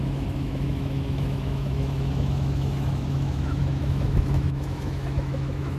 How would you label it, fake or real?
fake